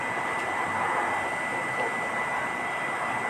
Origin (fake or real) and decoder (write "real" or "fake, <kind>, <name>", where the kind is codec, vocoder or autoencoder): real